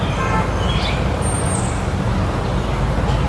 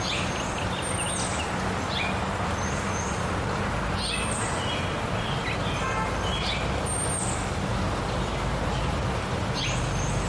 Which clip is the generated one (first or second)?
first